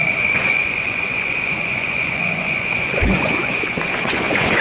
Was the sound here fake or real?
fake